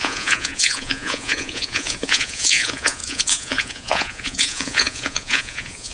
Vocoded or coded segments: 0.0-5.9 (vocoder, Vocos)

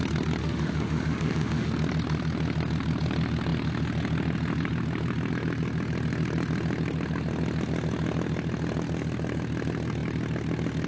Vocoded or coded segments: 0.4-1.7 (autoencoder, DAC-VAE)

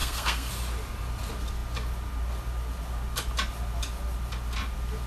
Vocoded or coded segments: 0.0-0.5 (codec, SNAC)

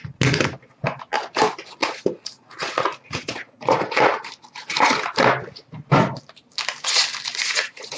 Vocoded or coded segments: 1.8-4.3 (vocoder, Vocos); 7.3-8.0

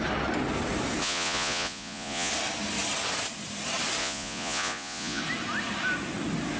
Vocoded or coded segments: 1.0-2.3 (vocoder, Vocos); 4.0-5.2

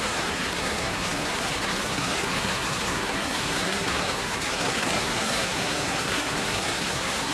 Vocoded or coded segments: 0.0-7.3 (codec, SNAC)

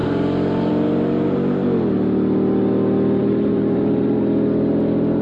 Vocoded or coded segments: 3.2-4.2 (vocoder, BigVGAN v2)